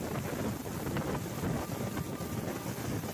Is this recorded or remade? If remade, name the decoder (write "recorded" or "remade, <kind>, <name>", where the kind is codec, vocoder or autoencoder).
recorded